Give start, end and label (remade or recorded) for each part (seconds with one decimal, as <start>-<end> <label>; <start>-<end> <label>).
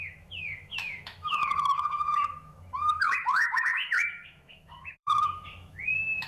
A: 0.0-6.3 remade